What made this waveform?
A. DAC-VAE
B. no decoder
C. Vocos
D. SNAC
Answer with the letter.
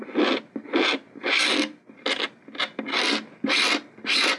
B